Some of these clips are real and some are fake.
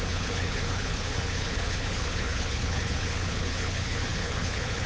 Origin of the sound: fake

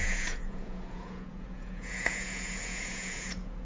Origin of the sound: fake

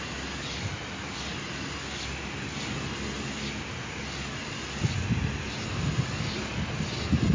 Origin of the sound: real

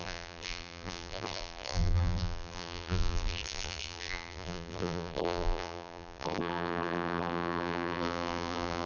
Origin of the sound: fake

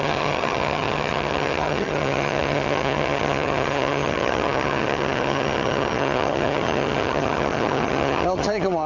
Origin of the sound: fake